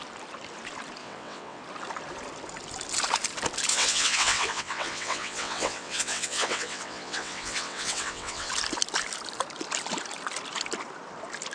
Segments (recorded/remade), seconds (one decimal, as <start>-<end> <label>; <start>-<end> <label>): 0.0-1.0 recorded; 1.0-1.6 remade; 1.6-3.7 recorded; 3.7-8.5 remade; 8.5-11.5 recorded